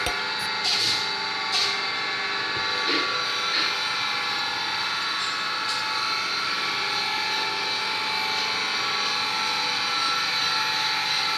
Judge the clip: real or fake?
real